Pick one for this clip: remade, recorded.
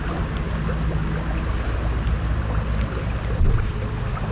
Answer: recorded